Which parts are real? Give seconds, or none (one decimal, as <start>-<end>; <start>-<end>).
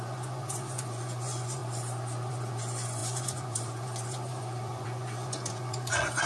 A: 1.6-2.3